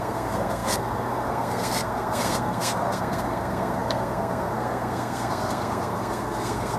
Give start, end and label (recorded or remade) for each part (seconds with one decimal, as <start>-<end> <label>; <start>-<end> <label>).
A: 0.0-6.8 remade